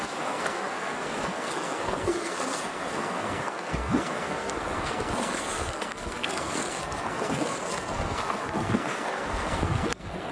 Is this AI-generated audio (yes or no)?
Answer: yes